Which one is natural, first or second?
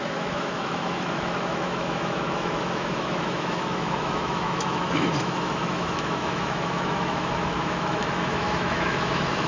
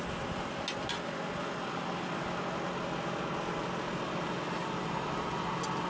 second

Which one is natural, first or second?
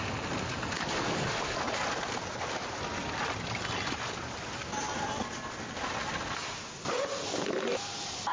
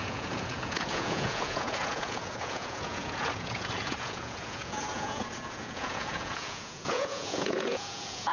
first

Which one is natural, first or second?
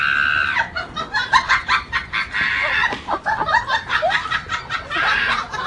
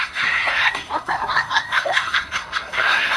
first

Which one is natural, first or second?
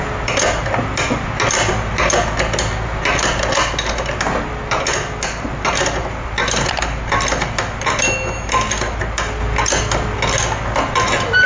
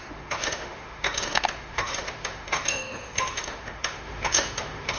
first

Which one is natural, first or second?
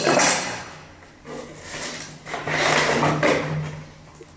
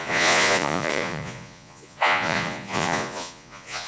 first